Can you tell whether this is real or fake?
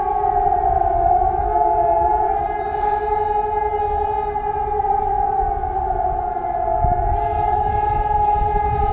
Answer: real